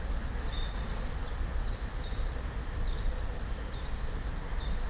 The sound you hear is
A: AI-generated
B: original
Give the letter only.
B